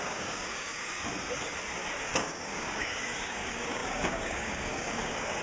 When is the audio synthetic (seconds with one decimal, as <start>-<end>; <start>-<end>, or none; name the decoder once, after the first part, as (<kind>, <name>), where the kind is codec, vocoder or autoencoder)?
0.0-1.1 (codec, DAC); 2.0-5.4